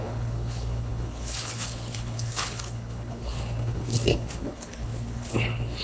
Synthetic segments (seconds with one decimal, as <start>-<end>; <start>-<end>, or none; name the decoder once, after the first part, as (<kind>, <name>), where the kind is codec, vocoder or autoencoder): 0.0-5.8 (codec, HILCodec)